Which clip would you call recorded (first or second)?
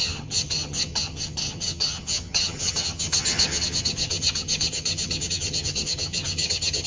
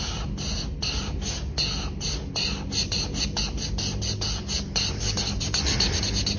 second